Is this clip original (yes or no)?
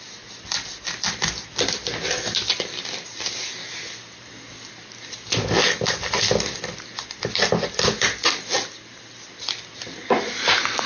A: yes